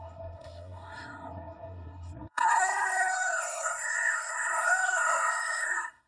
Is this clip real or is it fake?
fake